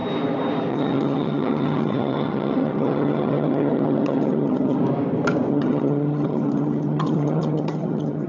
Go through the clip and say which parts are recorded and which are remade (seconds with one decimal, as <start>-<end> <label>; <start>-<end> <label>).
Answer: 0.0-0.7 recorded; 0.7-4.8 remade; 4.8-5.5 recorded; 5.5-8.3 remade